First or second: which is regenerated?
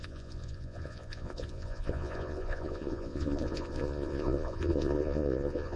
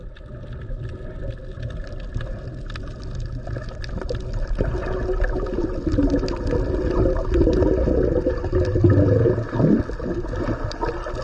first